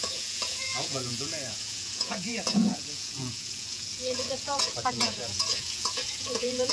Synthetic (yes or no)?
yes